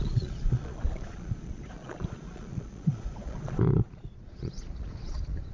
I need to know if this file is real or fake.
fake